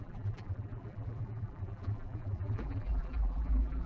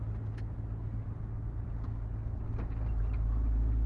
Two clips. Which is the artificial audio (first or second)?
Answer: first